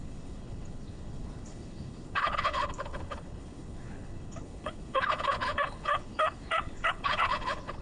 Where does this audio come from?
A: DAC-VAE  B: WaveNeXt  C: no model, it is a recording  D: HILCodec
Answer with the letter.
D